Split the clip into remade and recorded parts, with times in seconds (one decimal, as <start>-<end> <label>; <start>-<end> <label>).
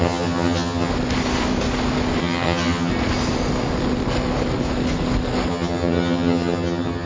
0.0-0.9 remade; 0.9-2.2 recorded; 2.2-2.9 remade; 2.9-5.5 recorded; 5.5-7.1 remade